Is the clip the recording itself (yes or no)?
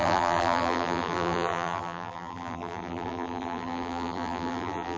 no